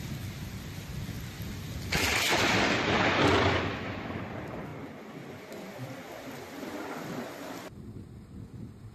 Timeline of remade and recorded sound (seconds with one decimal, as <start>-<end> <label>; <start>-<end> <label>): 0.0-3.7 recorded; 3.7-4.2 remade; 4.2-8.9 recorded